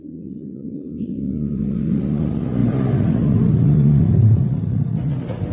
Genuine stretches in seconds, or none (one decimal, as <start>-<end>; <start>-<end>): none